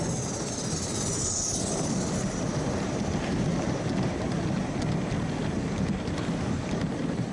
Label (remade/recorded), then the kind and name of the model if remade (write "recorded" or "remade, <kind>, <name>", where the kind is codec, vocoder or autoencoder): recorded